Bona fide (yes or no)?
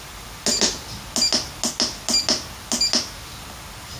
yes